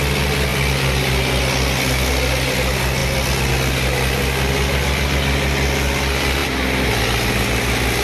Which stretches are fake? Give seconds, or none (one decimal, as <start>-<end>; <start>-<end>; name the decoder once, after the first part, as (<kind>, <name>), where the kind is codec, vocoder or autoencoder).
none